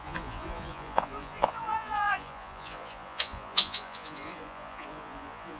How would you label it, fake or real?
fake